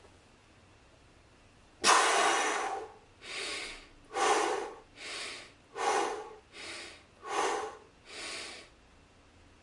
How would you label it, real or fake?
real